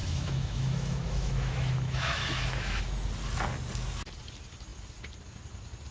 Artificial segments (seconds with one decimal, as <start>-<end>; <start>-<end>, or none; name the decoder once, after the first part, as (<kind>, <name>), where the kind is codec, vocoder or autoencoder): 0.0-2.8 (autoencoder, DAC-VAE)